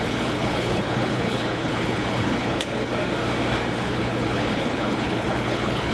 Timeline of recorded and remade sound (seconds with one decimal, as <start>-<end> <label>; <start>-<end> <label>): 0.0-2.9 remade; 2.9-3.8 recorded; 3.8-5.9 remade